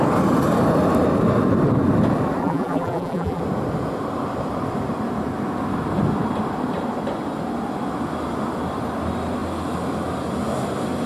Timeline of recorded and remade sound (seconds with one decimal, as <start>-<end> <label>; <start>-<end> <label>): 0.0-2.4 recorded; 2.4-3.4 remade; 3.4-11.1 recorded